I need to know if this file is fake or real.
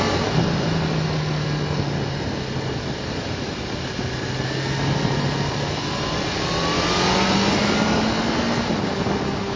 real